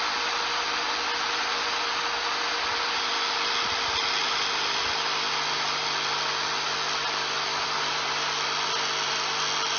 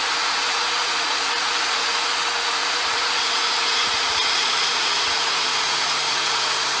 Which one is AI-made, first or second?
second